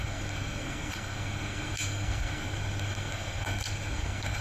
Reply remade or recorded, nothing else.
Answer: remade